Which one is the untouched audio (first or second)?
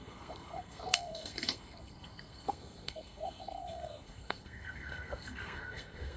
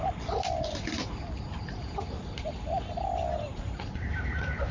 second